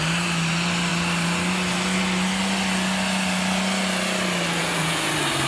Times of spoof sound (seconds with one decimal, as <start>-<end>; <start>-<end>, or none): 4.6-5.1